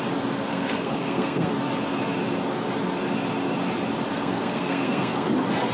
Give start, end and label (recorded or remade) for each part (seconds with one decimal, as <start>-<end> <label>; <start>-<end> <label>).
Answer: 0.0-0.5 recorded; 0.5-1.5 remade; 1.5-4.1 recorded; 4.1-5.3 remade; 5.3-5.7 recorded